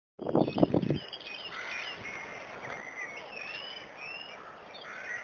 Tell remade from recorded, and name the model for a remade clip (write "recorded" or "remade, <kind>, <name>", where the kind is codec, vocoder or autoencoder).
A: recorded